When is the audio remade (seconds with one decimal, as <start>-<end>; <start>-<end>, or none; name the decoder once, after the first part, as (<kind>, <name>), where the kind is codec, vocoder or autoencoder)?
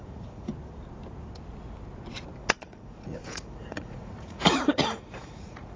0.0-0.5 (vocoder, Vocos); 2.4-5.8